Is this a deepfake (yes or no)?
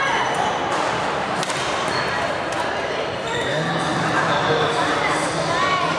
no